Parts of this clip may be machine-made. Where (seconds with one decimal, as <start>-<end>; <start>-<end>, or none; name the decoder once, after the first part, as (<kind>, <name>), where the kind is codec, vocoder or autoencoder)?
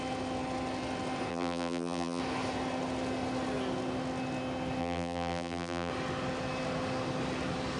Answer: 1.3-2.2 (vocoder, BigVGAN v2); 4.8-5.9